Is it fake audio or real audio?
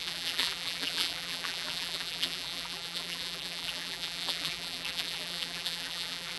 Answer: fake